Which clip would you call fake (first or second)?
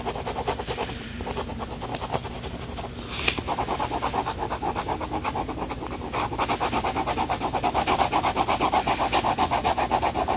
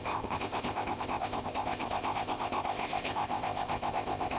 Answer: second